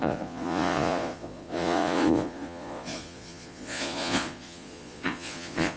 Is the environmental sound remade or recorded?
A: remade